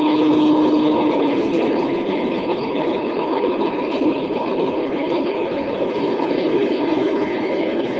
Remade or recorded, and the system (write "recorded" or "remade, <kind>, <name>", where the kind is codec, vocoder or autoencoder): remade, codec, HILCodec